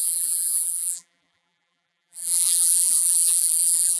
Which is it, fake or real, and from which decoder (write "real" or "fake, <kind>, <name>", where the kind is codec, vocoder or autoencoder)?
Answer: fake, vocoder, BigVGAN v2